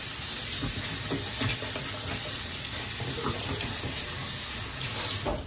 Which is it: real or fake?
real